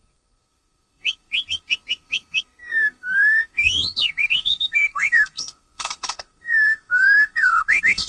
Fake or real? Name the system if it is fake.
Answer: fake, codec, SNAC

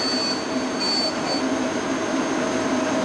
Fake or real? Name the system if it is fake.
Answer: fake, vocoder, BigVGAN v2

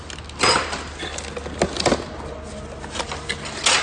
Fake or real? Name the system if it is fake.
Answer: real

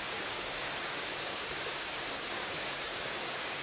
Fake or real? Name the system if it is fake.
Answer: fake, codec, DAC